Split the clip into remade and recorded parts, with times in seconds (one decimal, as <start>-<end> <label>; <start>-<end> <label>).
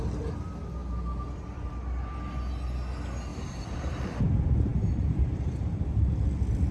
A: 0.0-3.3 recorded; 3.3-4.2 remade; 4.2-4.7 recorded; 4.7-5.6 remade; 5.6-6.7 recorded